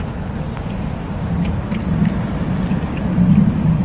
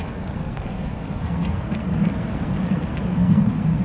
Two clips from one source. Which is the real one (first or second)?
first